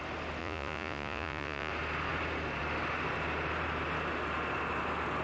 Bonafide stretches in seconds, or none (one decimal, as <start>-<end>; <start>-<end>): 0.0-0.4; 1.7-5.2